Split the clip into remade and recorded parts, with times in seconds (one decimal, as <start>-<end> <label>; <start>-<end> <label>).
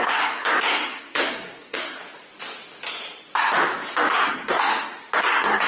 0.0-2.0 remade; 2.0-4.3 recorded; 4.3-4.7 remade; 4.7-5.2 recorded; 5.2-5.7 remade